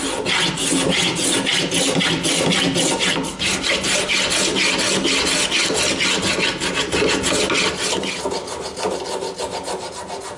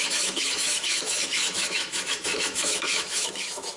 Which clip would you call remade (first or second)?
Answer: second